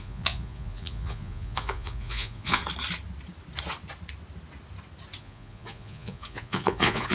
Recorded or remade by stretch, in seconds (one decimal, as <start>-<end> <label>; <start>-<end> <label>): 0.0-2.6 remade; 2.6-5.2 recorded; 5.2-7.1 remade